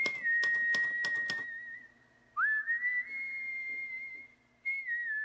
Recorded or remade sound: recorded